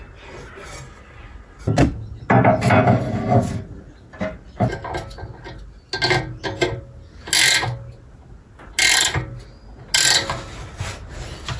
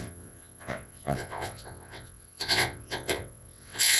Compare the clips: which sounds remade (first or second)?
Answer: second